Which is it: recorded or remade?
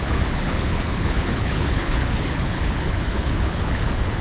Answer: remade